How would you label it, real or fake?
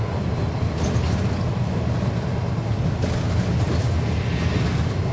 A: real